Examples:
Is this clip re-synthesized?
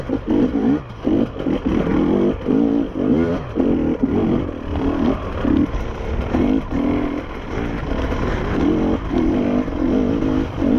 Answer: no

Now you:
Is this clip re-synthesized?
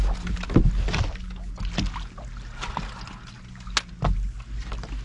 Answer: no